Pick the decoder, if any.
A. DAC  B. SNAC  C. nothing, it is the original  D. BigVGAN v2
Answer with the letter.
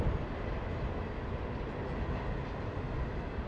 C